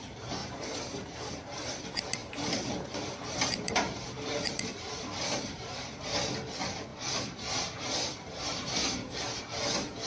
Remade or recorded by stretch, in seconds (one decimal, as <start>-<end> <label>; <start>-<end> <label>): 0.0-0.4 recorded; 0.4-1.7 remade; 1.7-2.2 recorded; 2.2-6.0 remade; 6.0-10.1 recorded